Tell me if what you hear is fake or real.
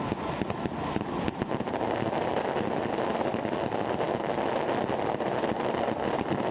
real